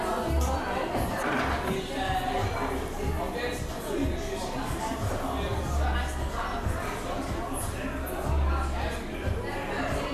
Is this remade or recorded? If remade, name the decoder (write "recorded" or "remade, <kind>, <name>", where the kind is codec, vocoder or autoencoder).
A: recorded